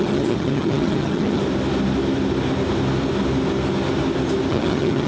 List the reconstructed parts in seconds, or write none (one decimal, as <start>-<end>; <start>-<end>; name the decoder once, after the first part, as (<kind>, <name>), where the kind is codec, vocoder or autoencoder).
0.0-1.4 (vocoder, HiFi-GAN); 4.5-5.1